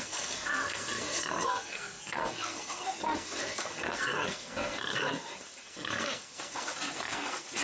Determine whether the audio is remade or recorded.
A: remade